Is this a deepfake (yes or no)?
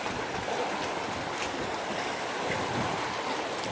no